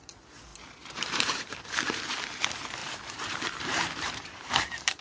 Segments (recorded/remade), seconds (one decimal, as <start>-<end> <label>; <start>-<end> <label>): 0.0-0.5 recorded; 0.5-1.5 remade; 1.5-2.8 recorded; 2.8-5.0 remade